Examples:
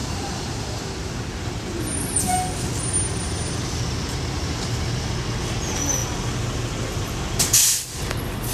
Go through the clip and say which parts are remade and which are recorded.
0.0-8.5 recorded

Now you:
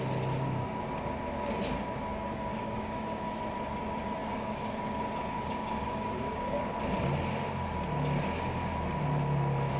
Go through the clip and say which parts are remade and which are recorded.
0.0-2.1 recorded; 2.1-3.4 remade; 3.4-4.2 recorded; 4.2-6.6 remade; 6.6-9.8 recorded